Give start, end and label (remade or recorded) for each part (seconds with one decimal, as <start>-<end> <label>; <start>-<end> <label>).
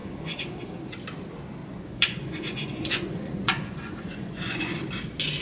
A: 0.0-0.6 remade; 0.6-1.6 recorded; 1.6-4.8 remade; 4.8-5.4 recorded